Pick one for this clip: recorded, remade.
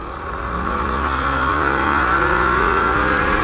remade